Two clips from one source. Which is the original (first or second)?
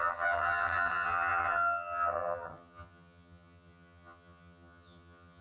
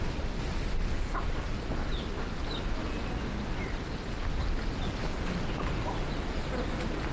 second